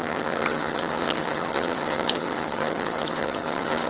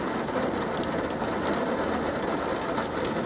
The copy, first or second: first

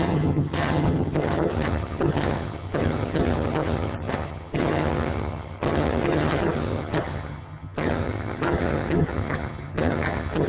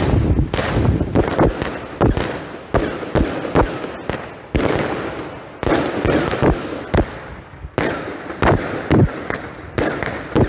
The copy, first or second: first